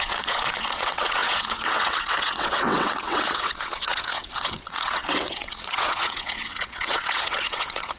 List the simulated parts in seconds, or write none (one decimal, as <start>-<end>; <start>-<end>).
0.0-8.0